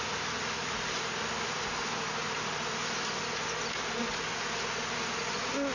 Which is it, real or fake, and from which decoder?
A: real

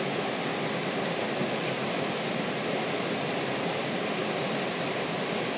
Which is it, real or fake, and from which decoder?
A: real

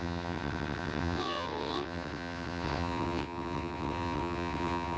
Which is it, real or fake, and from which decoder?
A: fake, vocoder, WaveNeXt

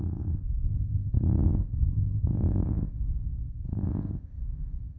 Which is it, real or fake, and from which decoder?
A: fake, codec, ZipCodec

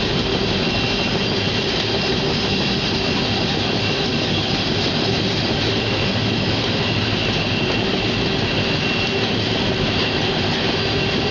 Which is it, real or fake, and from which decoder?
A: real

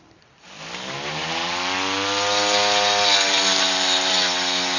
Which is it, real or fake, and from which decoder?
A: real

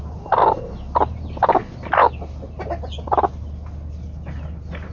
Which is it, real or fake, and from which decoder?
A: real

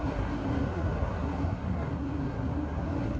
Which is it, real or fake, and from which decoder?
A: fake, codec, SNAC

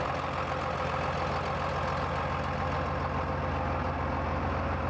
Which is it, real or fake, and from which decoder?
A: real